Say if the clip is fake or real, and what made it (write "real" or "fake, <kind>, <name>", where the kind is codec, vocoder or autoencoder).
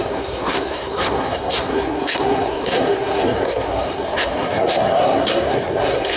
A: fake, codec, SNAC